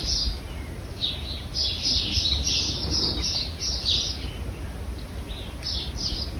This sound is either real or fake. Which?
real